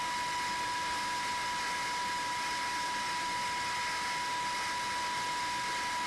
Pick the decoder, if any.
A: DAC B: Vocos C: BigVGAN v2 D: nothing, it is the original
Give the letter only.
D